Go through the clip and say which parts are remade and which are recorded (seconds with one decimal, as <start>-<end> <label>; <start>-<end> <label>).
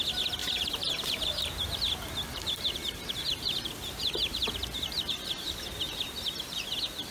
0.0-0.4 recorded; 0.4-1.9 remade; 1.9-2.3 recorded; 2.3-6.6 remade; 6.6-7.1 recorded